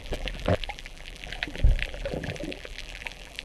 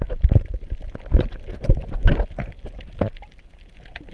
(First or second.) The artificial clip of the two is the first